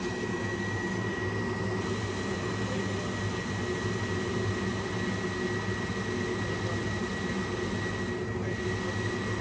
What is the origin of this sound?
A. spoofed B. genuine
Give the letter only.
B